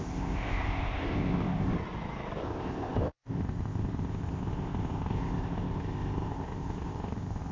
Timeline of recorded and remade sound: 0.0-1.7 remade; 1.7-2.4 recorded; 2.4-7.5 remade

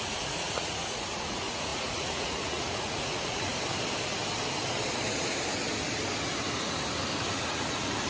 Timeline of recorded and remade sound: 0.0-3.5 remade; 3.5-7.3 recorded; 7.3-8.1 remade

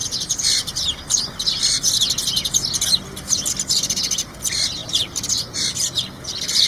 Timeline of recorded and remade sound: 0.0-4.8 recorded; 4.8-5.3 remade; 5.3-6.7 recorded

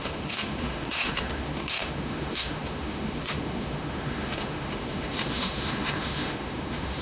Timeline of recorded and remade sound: 0.0-7.0 remade

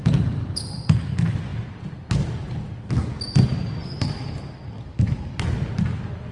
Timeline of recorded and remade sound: 0.0-6.3 recorded

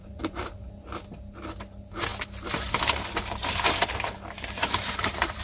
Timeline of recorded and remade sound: 0.0-0.6 remade; 0.6-2.1 recorded; 2.1-5.4 remade